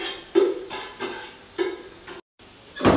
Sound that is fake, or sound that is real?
real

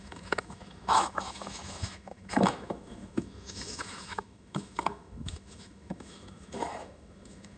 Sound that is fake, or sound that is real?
fake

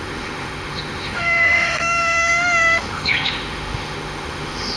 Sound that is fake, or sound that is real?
fake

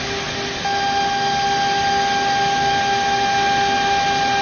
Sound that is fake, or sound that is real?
real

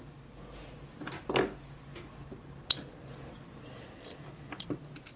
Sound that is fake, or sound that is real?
real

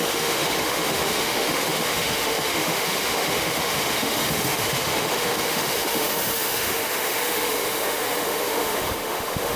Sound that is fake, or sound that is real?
fake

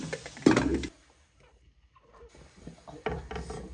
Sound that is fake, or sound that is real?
real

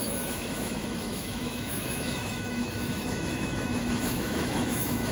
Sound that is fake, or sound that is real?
fake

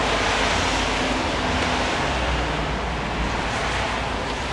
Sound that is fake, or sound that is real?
real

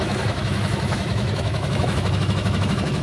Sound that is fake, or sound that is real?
fake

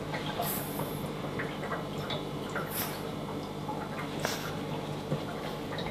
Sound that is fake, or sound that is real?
real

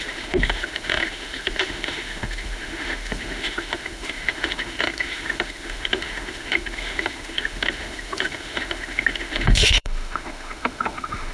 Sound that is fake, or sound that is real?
fake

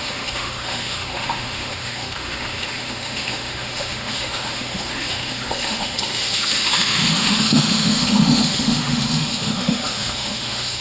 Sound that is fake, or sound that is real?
fake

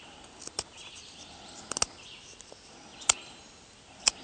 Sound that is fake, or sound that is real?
real